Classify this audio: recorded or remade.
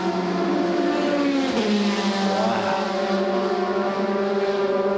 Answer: recorded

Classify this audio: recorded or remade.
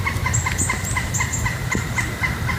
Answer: remade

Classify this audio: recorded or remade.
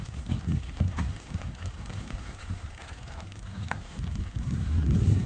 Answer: remade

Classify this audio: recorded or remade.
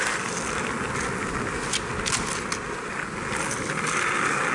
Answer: recorded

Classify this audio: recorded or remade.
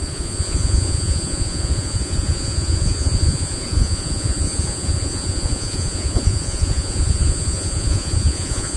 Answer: remade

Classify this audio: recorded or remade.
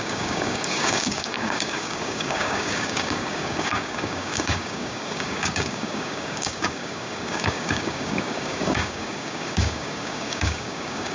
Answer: remade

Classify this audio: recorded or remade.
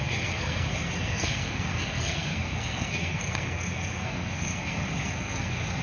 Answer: remade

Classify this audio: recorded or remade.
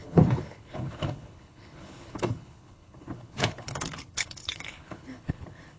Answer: remade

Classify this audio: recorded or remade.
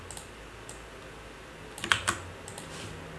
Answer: recorded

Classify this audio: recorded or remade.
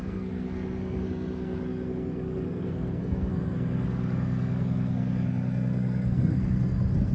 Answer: remade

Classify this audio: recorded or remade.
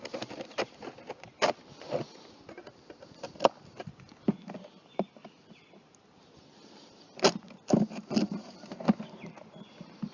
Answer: recorded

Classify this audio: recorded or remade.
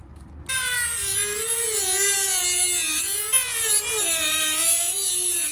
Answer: recorded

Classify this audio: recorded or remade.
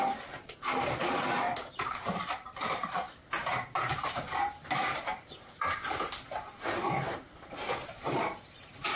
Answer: remade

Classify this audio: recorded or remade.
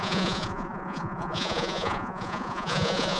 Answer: remade